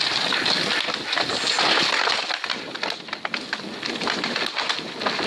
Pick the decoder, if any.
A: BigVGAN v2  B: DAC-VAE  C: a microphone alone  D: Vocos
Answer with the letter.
C